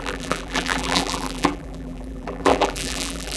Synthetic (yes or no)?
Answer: yes